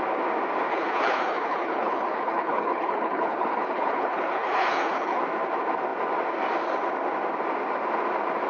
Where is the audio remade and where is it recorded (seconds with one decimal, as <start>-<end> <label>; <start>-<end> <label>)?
0.0-0.7 recorded; 0.7-5.2 remade; 5.2-8.5 recorded